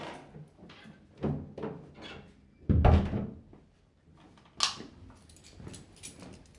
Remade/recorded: recorded